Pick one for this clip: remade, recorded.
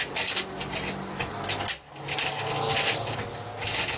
recorded